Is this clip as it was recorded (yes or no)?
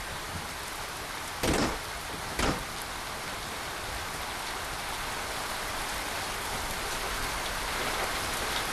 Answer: yes